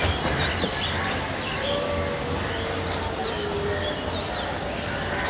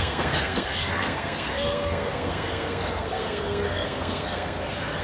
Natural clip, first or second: first